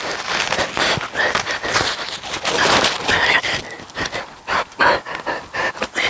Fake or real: real